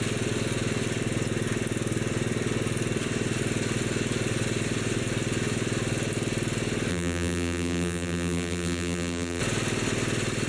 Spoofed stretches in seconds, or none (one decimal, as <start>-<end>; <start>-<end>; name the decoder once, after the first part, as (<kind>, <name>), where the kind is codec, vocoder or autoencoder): 6.9-9.4 (vocoder, BigVGAN v2)